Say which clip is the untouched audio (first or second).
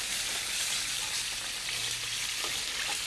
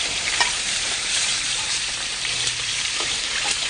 first